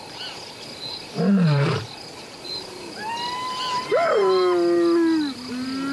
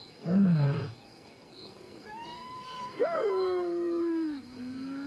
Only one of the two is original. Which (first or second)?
first